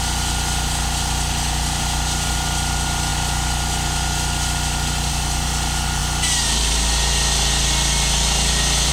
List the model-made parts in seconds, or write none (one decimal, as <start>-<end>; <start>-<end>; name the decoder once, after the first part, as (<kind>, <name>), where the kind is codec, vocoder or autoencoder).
none